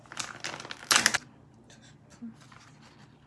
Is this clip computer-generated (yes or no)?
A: no